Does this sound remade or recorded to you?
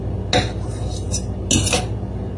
recorded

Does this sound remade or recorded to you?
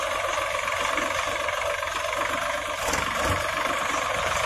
recorded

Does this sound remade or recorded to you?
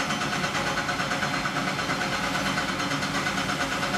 recorded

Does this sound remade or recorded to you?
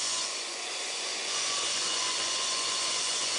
remade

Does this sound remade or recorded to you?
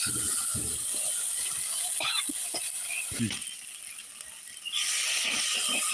recorded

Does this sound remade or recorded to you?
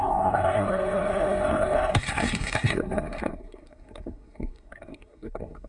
remade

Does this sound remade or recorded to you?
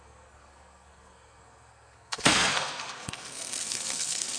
remade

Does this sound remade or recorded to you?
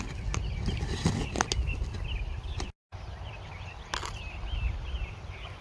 recorded